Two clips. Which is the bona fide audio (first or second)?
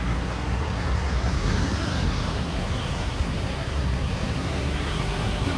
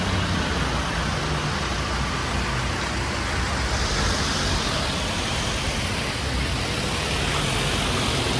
second